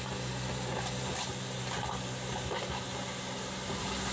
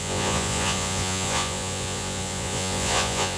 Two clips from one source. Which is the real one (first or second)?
first